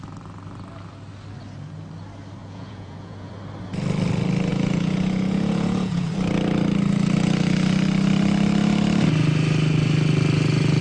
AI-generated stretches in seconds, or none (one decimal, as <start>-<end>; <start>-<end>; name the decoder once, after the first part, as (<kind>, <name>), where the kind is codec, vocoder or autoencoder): 2.4-3.3 (vocoder, Vocos); 4.5-6.1